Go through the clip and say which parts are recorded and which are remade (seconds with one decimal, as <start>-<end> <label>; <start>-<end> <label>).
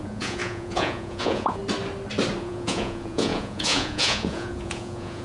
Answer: 0.0-1.6 remade; 1.6-2.4 recorded; 2.4-5.2 remade